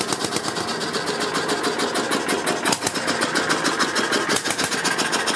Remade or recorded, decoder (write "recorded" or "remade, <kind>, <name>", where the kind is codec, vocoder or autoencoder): recorded